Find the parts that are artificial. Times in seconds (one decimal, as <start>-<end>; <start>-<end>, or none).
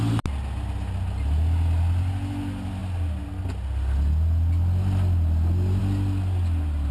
none